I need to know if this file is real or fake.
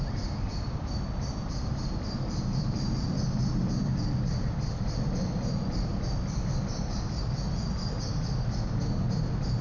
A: real